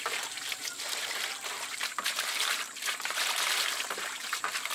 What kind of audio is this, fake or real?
fake